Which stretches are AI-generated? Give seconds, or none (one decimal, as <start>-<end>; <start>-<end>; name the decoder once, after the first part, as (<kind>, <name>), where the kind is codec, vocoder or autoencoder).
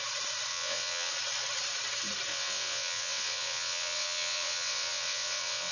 0.5-1.1 (vocoder, WaveNeXt); 2.3-5.7